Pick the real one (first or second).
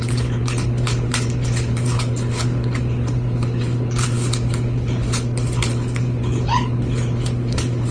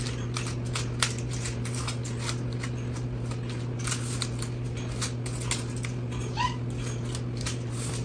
second